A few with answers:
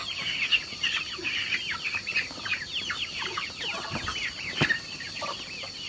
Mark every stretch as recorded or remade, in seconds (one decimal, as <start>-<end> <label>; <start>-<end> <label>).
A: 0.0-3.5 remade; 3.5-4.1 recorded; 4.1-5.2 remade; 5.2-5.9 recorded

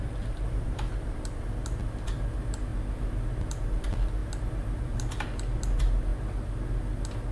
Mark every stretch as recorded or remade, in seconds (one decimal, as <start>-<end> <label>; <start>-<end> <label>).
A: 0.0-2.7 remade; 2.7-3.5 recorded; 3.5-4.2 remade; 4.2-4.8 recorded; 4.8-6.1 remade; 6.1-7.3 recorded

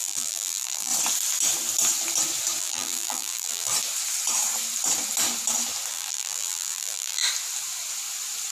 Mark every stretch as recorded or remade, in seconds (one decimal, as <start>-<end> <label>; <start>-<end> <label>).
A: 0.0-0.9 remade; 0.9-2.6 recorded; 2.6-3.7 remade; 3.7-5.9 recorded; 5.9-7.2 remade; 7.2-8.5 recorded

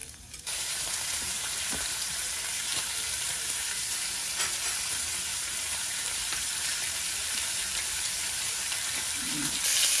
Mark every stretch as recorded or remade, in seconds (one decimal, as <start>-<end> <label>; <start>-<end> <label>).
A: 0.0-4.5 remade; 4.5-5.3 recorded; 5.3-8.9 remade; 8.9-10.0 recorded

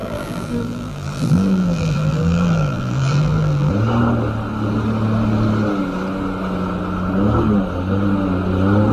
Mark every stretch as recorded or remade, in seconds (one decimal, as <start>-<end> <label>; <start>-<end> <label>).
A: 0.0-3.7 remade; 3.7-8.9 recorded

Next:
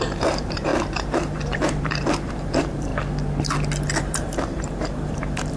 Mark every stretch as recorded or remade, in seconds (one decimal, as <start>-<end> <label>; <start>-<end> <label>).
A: 0.0-2.9 remade; 2.9-4.0 recorded; 4.0-5.6 remade